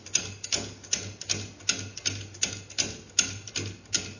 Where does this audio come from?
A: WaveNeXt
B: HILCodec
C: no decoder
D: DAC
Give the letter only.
C